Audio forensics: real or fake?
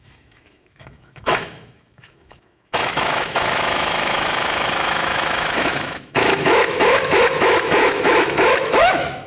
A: fake